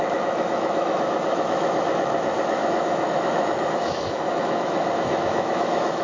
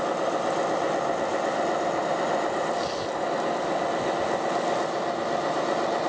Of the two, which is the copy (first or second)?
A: first